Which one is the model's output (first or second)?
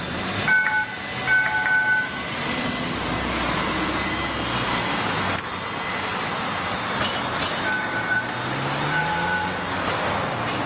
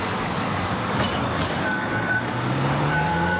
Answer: second